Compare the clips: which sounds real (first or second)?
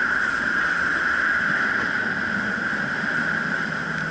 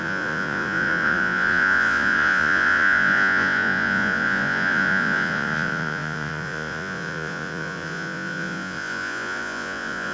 first